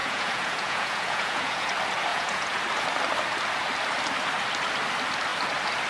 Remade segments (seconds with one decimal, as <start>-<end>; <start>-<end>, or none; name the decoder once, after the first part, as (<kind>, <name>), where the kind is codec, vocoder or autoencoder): 0.0-1.7 (vocoder, Vocos); 2.1-2.6